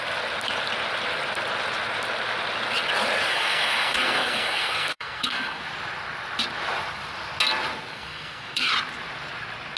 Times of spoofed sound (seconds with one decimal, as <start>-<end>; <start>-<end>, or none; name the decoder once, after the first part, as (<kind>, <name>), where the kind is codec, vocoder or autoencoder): 3.3-5.6 (codec, SNAC); 7.9-8.7